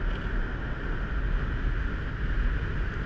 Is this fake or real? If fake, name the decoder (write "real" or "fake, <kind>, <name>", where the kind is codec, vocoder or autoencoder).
real